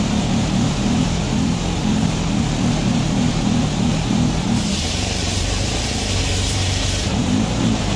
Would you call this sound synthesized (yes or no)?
yes